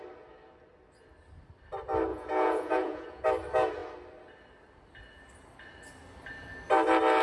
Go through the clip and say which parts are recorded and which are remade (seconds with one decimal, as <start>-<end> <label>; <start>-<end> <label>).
0.0-2.1 recorded; 2.1-3.2 remade; 3.2-7.2 recorded

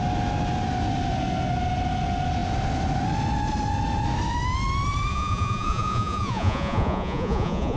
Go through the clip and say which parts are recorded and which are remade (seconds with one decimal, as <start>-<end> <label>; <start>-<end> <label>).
0.0-5.1 recorded; 5.1-7.8 remade

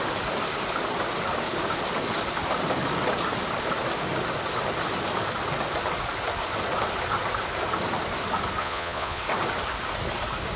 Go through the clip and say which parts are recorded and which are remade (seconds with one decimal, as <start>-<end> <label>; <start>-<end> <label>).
0.0-8.6 recorded; 8.6-9.2 remade; 9.2-10.6 recorded

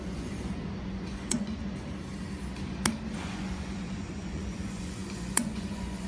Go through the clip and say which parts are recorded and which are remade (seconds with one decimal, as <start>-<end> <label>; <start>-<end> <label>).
0.0-1.6 remade; 1.6-3.2 recorded; 3.2-6.1 remade

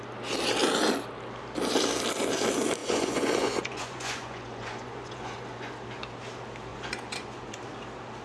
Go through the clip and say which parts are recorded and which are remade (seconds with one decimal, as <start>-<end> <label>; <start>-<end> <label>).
0.0-2.8 recorded; 2.8-5.7 remade; 5.7-6.7 recorded; 6.7-7.6 remade; 7.6-8.2 recorded

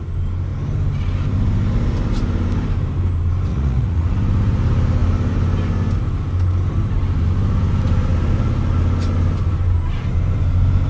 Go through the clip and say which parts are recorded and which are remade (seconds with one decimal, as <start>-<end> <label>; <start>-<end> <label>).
0.0-3.5 recorded; 3.5-4.1 remade; 4.1-10.9 recorded

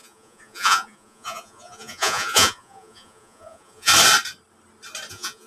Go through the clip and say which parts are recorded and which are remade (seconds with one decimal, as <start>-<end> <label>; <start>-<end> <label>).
0.0-3.9 remade; 3.9-5.1 recorded; 5.1-5.5 remade